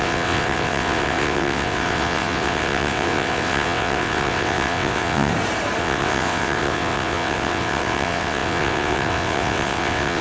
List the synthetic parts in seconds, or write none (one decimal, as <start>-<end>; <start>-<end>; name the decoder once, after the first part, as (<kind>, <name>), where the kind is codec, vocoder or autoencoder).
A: 0.0-5.3 (vocoder, WaveNeXt); 5.8-10.2